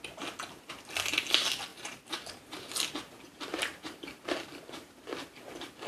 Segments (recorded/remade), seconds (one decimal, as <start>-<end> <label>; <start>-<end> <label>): 0.0-1.7 recorded; 1.7-2.3 remade; 2.3-3.7 recorded; 3.7-5.0 remade; 5.0-5.9 recorded